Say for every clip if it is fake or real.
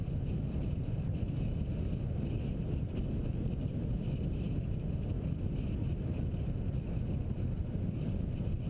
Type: real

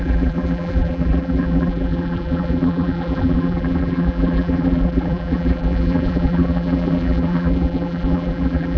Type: fake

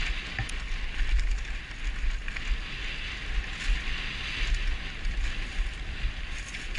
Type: real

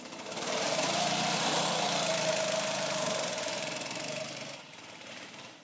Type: fake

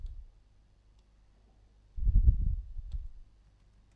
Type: real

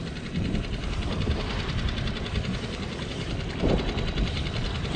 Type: fake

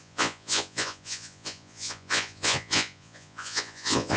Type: fake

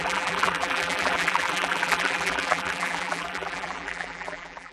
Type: fake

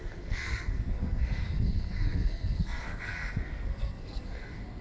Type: fake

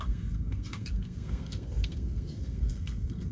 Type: fake